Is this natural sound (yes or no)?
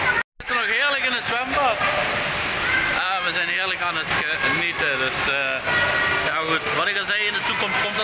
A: yes